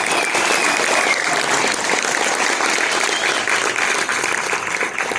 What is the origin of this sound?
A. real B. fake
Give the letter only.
A